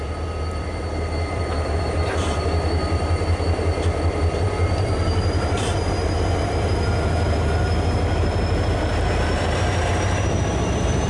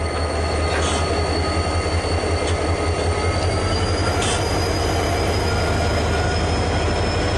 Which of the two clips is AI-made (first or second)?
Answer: first